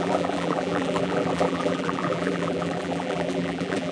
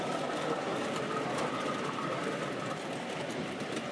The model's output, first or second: first